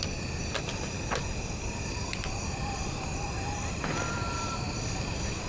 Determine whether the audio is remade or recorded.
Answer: recorded